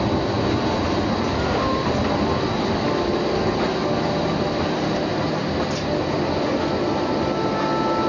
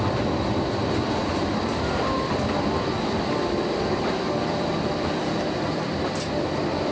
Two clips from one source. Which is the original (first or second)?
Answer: first